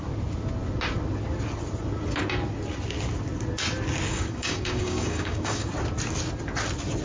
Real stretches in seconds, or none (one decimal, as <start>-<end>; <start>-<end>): 0.0-4.1; 5.7-7.0